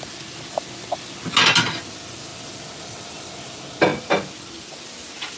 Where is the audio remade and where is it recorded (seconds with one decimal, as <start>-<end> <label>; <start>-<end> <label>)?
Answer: 0.0-5.4 recorded